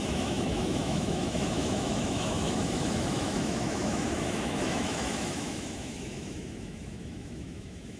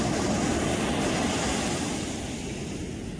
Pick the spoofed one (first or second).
first